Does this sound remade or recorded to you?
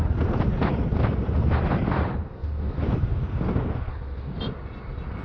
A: recorded